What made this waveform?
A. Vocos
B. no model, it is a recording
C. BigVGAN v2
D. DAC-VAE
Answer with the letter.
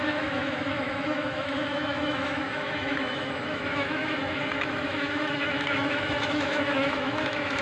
D